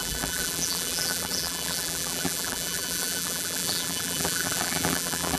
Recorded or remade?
remade